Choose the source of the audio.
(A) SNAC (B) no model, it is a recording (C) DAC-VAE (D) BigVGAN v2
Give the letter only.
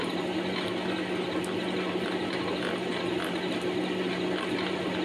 B